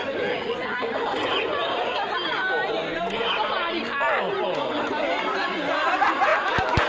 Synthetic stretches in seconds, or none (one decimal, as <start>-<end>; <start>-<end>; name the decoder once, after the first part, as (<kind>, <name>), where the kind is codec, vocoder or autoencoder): none